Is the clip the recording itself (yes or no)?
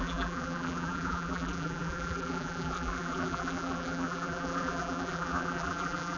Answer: no